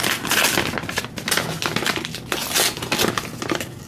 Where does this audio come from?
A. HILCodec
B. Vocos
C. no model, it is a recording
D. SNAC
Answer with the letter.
C